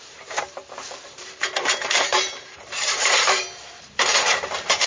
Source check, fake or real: fake